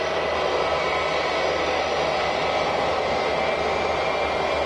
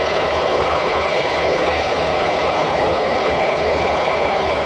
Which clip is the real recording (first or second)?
first